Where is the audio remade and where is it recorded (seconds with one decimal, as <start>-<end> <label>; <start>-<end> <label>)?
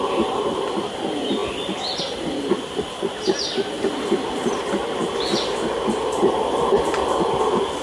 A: 0.0-7.8 recorded